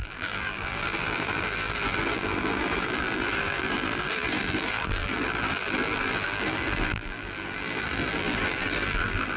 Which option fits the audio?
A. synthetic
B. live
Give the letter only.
A